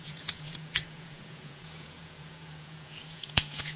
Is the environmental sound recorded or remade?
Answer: remade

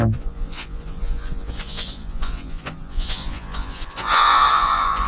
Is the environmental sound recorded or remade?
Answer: remade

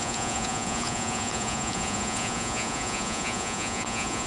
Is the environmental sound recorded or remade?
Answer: remade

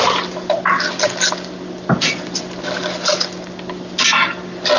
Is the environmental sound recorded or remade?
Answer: recorded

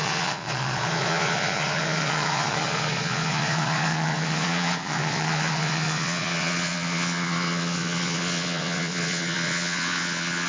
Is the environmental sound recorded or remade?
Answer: remade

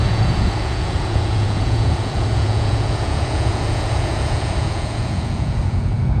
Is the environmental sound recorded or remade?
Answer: remade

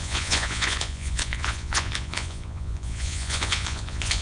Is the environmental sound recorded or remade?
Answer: remade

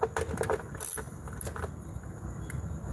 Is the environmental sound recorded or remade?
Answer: recorded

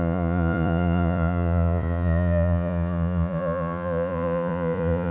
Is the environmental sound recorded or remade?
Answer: remade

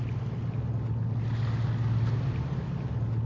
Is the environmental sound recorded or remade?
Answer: recorded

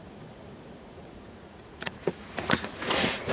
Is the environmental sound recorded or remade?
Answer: remade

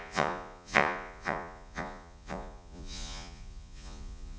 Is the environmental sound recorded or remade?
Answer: remade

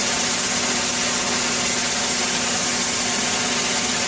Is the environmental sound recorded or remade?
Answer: recorded